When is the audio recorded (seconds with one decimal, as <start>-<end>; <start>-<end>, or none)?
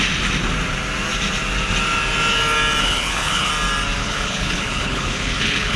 0.0-2.8; 3.5-4.0